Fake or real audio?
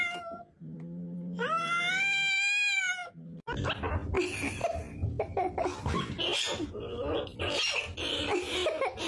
real